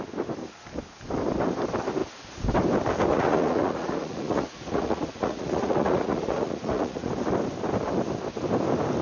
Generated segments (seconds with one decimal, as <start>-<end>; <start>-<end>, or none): 3.1-7.1